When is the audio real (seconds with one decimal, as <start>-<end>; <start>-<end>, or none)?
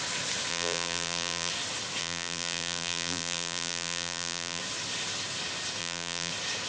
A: 0.0-0.5; 1.5-2.0; 4.6-5.8; 6.3-6.7